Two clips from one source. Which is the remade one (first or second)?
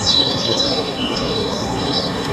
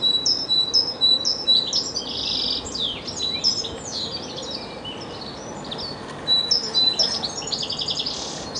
first